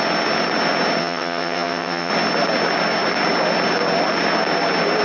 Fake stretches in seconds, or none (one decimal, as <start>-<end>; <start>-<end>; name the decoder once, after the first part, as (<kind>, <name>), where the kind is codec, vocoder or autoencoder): 1.0-2.1 (vocoder, HiFi-GAN)